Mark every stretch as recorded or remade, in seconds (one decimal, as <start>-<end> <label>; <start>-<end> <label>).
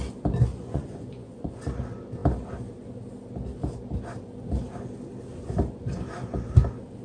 0.0-0.5 recorded; 0.5-1.5 remade; 1.5-7.0 recorded